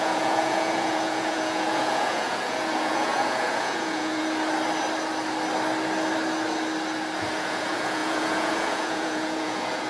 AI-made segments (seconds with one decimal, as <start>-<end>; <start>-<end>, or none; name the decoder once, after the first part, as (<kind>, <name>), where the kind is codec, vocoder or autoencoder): 0.0-4.2 (vocoder, Vocos); 7.4-9.9